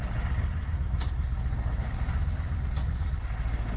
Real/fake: real